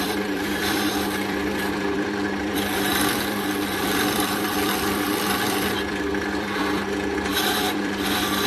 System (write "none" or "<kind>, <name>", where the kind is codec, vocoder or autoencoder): vocoder, BigVGAN v2